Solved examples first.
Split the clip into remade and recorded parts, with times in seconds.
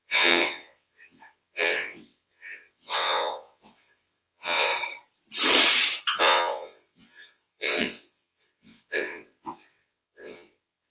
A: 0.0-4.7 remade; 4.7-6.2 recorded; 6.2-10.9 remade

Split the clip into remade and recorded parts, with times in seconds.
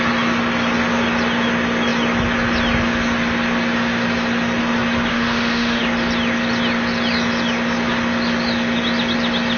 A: 0.0-5.1 recorded; 5.1-5.8 remade; 5.8-9.6 recorded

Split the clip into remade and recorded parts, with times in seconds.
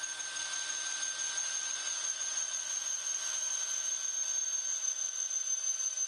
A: 0.0-1.2 recorded; 1.2-3.2 remade; 3.2-4.7 recorded; 4.7-5.3 remade; 5.3-6.1 recorded